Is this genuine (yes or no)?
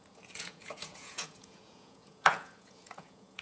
no